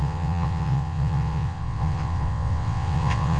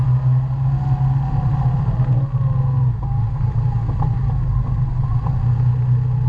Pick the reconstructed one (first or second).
first